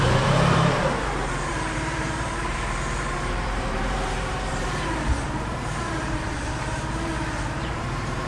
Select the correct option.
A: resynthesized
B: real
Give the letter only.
A